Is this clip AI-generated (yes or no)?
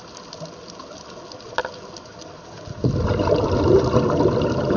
no